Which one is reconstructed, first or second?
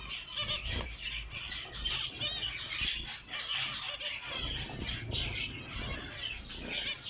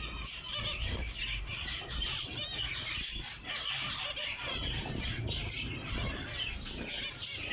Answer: second